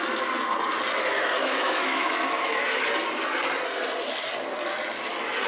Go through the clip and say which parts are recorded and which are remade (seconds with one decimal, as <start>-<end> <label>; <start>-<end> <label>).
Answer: 0.0-1.4 recorded; 1.4-2.8 remade; 2.8-5.5 recorded